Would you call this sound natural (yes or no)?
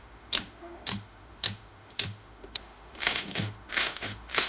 no